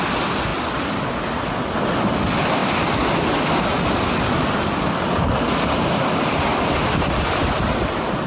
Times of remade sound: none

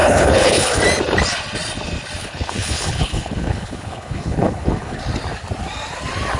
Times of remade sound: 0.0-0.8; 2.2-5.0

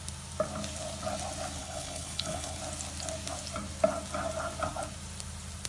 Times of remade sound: 1.6-2.6